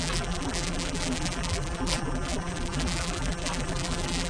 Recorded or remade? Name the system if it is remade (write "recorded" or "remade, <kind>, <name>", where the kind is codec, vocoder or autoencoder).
remade, vocoder, BigVGAN v2